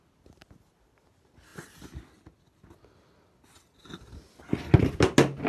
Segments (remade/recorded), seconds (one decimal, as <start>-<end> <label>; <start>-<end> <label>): 0.0-5.5 recorded

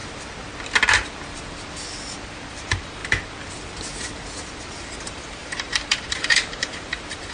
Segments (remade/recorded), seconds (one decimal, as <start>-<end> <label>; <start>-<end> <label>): 0.0-2.5 recorded; 2.5-3.0 remade; 3.0-4.6 recorded; 4.6-7.3 remade

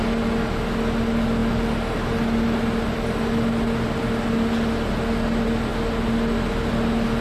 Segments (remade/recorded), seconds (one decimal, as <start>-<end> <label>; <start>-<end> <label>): 0.0-7.2 recorded

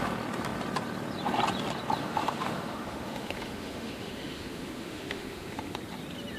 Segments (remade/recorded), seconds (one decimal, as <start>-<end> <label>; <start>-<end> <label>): 0.0-2.0 recorded; 2.0-5.8 remade; 5.8-6.4 recorded

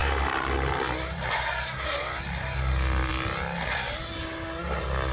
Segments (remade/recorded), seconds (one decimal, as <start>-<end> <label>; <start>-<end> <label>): 0.0-5.1 recorded